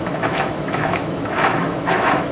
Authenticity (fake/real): fake